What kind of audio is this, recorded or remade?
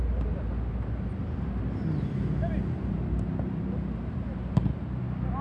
recorded